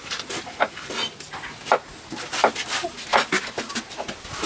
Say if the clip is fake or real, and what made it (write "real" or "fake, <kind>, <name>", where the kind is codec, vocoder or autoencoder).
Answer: real